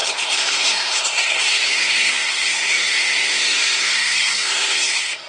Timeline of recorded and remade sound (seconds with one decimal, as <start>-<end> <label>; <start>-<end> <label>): 0.0-5.3 remade